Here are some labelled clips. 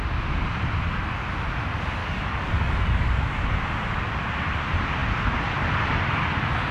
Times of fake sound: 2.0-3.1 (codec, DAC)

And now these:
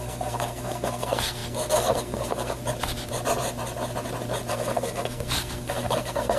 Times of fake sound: 0.0-2.6 (codec, SNAC); 4.5-6.4